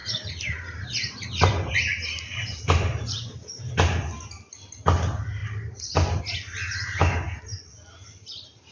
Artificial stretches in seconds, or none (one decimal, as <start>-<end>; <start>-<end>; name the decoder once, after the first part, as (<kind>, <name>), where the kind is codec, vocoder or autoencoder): 0.0-3.7 (vocoder, BigVGAN v2); 5.4-6.2